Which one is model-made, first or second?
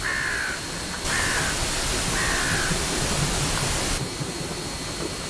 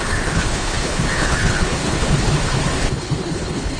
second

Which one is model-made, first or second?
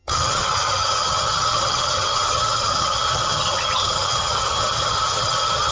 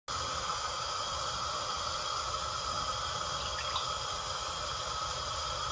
first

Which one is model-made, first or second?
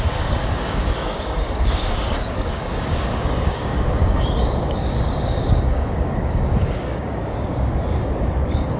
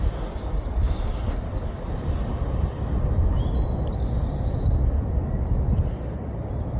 first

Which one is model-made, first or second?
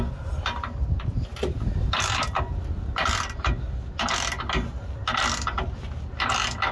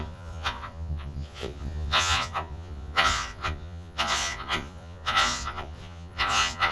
second